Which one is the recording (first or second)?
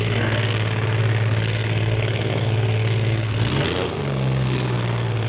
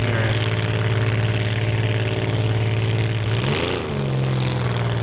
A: second